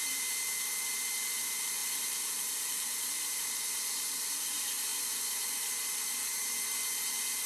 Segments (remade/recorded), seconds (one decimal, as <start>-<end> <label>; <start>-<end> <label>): 0.0-7.5 remade